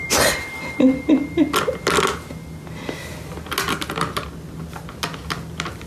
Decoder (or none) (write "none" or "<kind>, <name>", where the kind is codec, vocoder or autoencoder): none